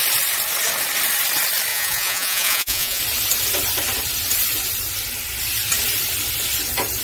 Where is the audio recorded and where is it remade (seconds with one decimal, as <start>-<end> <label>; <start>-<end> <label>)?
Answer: 0.0-1.7 recorded; 1.7-3.0 remade; 3.0-7.0 recorded